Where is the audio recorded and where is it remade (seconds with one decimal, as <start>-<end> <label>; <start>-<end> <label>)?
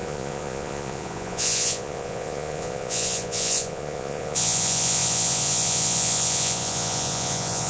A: 0.0-7.7 remade